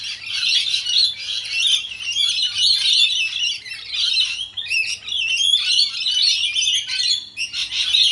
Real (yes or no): yes